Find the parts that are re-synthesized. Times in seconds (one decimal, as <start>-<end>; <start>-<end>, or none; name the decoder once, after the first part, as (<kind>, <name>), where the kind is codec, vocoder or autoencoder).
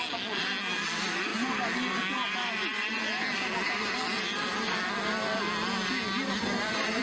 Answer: none